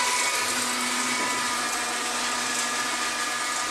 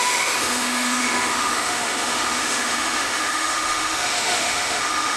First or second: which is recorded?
first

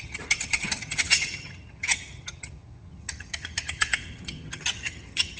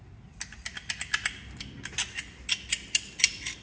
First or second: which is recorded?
second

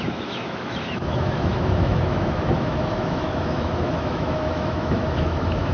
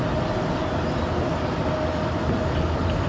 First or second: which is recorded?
second